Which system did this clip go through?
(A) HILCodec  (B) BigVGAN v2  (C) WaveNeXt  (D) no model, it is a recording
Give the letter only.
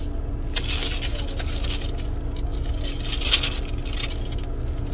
D